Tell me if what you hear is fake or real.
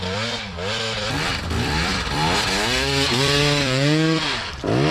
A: fake